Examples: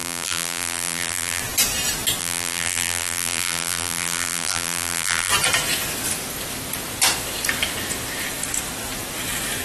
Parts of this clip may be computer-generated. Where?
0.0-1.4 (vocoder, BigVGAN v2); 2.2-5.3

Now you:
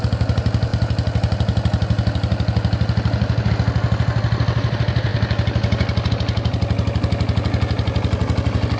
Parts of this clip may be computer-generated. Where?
none

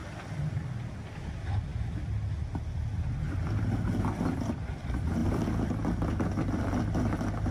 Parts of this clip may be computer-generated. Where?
0.0-1.7 (vocoder, BigVGAN v2); 4.8-7.5